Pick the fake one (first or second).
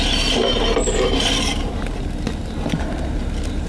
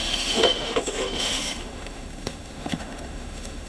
second